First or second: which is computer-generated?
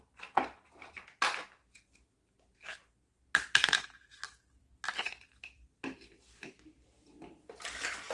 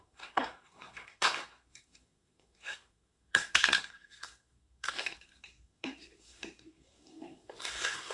second